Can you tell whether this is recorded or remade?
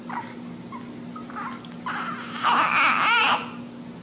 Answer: recorded